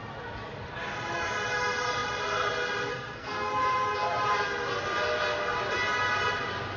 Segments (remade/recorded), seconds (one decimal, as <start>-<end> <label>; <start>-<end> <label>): 0.0-2.9 recorded; 2.9-3.5 remade; 3.5-6.8 recorded